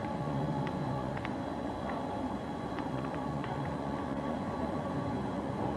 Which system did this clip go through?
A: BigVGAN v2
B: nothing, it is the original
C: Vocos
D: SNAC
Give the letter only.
C